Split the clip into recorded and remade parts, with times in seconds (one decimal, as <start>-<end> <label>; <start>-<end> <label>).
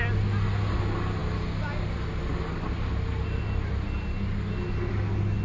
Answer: 0.0-5.4 recorded